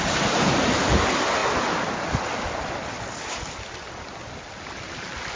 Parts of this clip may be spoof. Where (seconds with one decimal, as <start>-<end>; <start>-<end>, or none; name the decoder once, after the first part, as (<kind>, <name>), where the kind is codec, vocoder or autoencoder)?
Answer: none